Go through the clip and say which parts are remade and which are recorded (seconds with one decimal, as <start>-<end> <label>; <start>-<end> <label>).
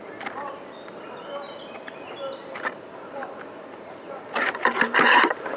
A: 0.0-2.4 recorded; 2.4-5.6 remade